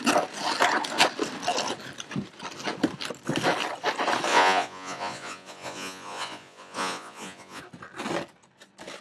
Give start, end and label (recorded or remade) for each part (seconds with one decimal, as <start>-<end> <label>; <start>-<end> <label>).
0.0-4.3 recorded; 4.3-7.6 remade; 7.6-9.0 recorded